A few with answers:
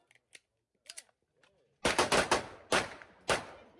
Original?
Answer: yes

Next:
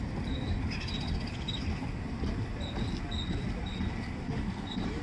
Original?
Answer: yes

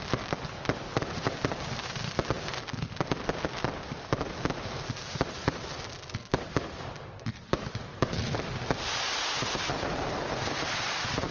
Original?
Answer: no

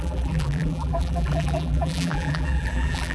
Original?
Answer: no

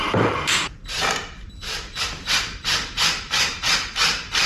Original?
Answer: no